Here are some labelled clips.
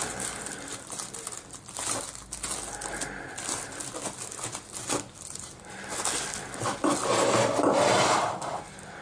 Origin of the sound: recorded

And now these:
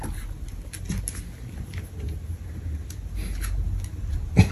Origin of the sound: recorded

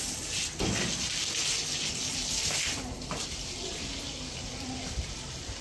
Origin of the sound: recorded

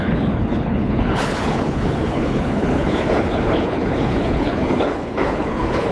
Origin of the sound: remade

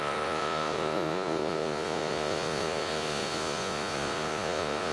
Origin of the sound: remade